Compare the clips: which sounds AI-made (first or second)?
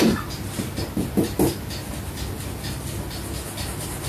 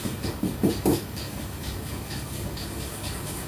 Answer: second